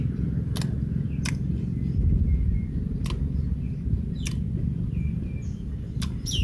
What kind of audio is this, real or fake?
real